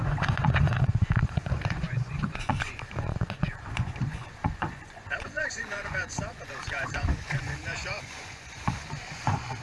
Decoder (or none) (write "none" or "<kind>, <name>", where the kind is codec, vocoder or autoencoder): vocoder, Vocos